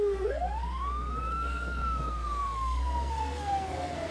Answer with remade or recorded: remade